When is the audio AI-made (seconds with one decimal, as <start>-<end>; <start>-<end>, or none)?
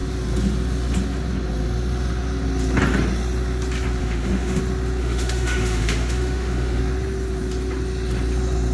4.0-4.6; 5.0-6.8